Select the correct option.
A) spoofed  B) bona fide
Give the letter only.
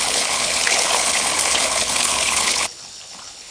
A